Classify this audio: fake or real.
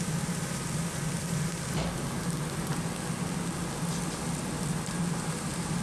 real